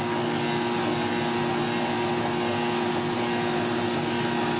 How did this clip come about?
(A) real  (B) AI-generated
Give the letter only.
A